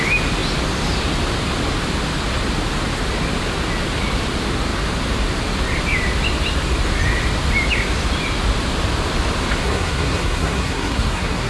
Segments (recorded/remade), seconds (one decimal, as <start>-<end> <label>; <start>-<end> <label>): 0.0-9.6 recorded; 9.6-11.5 remade